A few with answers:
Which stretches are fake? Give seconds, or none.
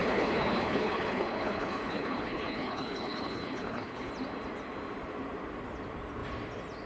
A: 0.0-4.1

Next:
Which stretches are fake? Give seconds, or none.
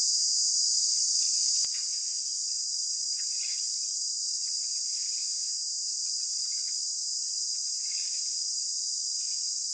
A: 0.0-0.5; 5.2-5.9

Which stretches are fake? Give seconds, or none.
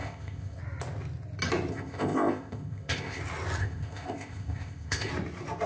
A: 0.0-0.6; 1.7-3.2; 3.6-5.1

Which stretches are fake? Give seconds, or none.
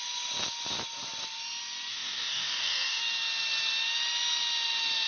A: 1.9-3.0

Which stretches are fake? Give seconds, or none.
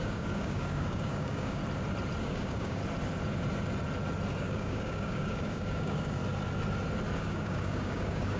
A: 0.0-1.6; 2.2-2.8; 4.4-6.2; 7.2-8.4